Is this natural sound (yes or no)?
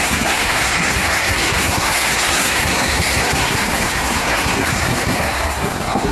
no